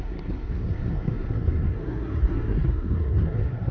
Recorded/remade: remade